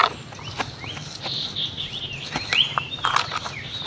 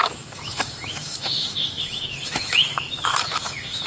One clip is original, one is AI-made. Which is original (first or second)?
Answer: first